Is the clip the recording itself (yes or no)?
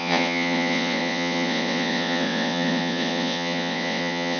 no